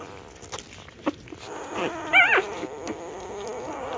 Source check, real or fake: real